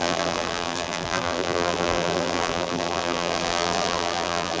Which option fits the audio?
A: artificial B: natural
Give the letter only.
A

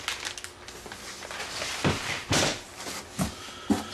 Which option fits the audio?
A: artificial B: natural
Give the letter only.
B